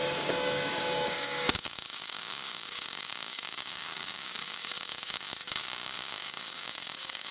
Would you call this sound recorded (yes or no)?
no